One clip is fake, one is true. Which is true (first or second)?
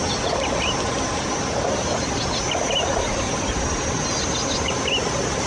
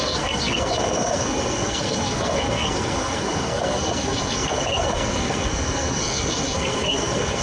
first